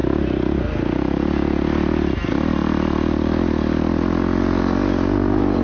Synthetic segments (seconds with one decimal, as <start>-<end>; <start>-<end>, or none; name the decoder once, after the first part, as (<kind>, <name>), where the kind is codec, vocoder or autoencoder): none

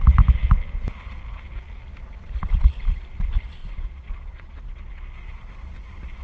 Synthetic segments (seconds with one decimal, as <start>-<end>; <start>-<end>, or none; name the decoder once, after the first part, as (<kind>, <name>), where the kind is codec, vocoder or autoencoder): 3.6-5.5 (vocoder, Vocos)

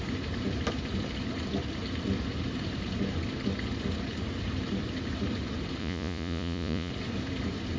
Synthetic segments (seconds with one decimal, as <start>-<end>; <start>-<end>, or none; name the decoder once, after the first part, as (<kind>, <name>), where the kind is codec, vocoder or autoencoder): 5.8-6.9 (vocoder, Vocos)

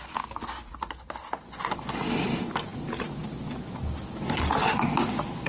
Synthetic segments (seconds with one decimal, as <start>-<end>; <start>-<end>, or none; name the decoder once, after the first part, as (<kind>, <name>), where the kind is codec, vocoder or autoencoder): none

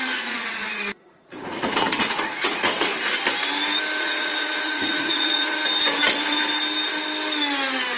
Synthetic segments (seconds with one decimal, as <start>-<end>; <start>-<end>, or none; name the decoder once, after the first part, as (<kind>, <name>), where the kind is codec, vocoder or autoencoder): 0.0-2.9 (vocoder, Vocos); 4.0-5.6

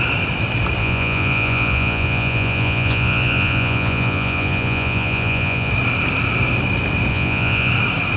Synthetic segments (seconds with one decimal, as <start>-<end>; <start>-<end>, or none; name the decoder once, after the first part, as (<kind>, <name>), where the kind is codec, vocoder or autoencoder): 0.8-5.7 (vocoder, Vocos); 7.1-7.7